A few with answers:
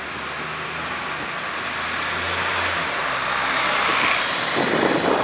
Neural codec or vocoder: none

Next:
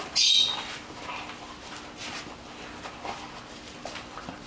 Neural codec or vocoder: none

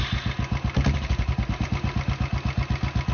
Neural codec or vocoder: none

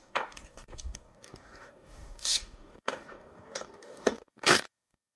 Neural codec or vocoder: codec, DAC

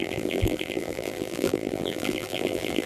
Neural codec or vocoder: vocoder, BigVGAN v2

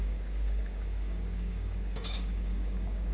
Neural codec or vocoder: codec, DAC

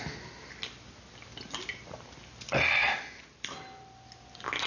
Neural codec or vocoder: none